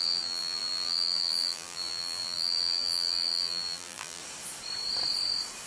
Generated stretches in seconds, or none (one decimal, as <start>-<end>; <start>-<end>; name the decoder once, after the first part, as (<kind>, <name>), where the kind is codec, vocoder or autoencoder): 0.0-4.2 (vocoder, BigVGAN v2)